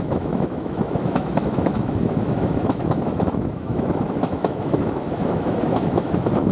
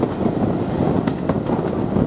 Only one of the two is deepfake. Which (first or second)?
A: first